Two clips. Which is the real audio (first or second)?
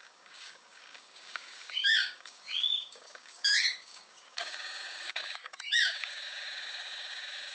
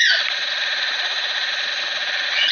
second